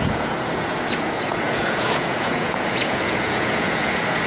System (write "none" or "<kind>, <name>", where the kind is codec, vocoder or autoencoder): vocoder, Vocos